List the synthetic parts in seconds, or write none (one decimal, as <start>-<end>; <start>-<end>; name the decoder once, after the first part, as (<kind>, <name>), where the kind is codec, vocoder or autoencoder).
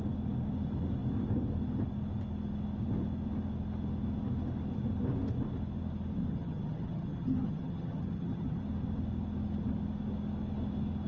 6.3-8.6 (vocoder, HiFi-GAN)